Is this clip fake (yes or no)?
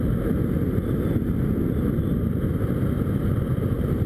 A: no